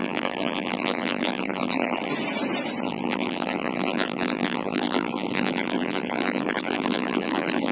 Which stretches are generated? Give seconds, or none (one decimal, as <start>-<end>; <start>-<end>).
0.0-2.1; 2.8-7.7